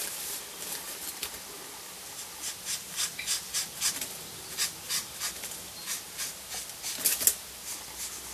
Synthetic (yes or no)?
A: no